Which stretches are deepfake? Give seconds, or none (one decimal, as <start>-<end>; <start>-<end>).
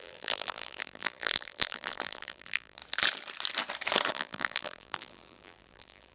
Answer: 0.0-2.8; 4.1-6.1